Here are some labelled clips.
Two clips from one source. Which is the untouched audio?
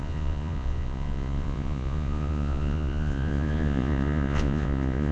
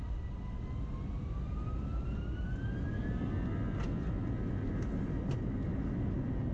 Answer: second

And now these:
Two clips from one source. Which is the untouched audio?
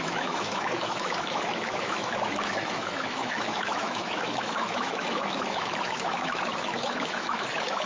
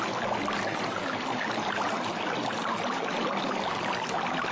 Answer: second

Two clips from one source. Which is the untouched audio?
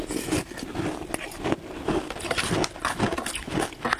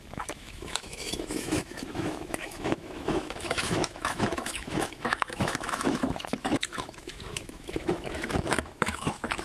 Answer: first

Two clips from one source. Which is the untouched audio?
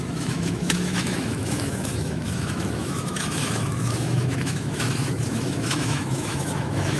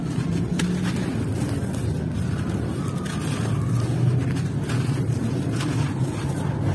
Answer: second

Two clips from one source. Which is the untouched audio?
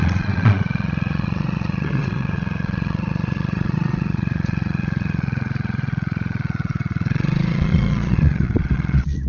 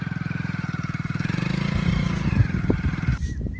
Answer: second